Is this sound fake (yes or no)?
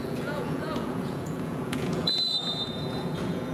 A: yes